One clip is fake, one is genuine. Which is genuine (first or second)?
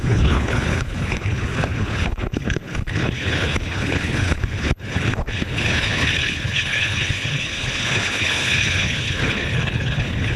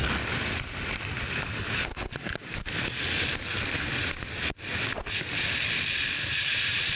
second